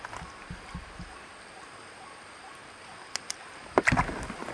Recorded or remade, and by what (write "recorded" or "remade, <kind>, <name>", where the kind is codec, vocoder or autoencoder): recorded